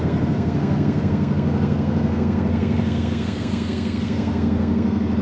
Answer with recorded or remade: remade